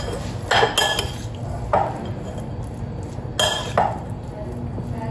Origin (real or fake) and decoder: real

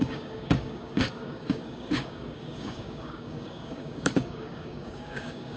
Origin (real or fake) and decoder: fake, codec, DAC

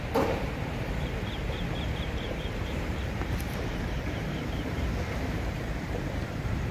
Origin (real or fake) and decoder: fake, vocoder, BigVGAN v2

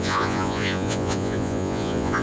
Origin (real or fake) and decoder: fake, vocoder, Vocos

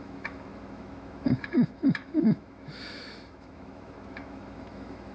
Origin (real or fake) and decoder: fake, autoencoder, DAC-VAE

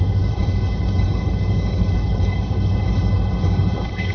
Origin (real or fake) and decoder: fake, codec, HILCodec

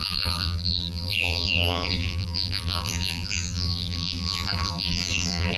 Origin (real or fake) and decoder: fake, vocoder, BigVGAN v2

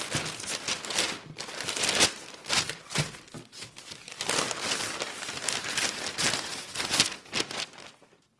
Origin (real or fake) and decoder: real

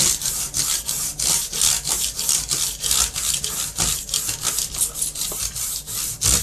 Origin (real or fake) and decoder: real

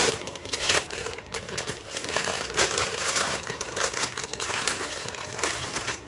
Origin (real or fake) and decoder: fake, codec, SNAC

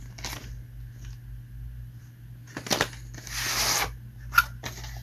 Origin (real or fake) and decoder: real